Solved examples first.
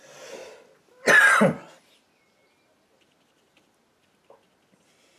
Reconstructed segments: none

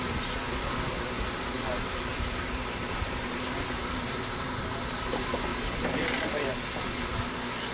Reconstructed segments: 2.1-4.6; 5.5-6.2